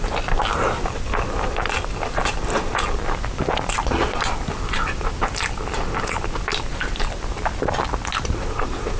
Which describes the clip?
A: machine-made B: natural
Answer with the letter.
B